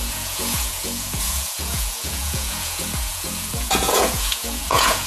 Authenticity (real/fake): fake